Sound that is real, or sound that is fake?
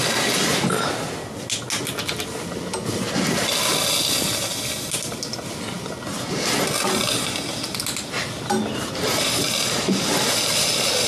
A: real